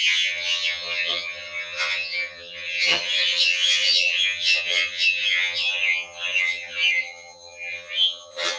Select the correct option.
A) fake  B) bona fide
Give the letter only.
A